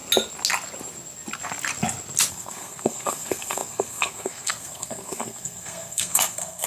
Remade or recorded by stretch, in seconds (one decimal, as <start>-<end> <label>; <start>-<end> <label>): 0.0-2.3 recorded; 2.3-6.7 remade

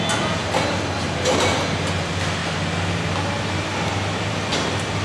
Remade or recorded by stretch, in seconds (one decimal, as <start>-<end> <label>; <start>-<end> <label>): 0.0-0.4 recorded; 0.4-1.5 remade; 1.5-5.0 recorded